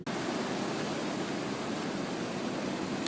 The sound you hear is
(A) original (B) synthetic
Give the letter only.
A